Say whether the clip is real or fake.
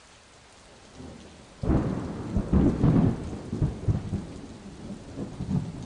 real